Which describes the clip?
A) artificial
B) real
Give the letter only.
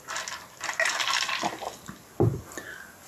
B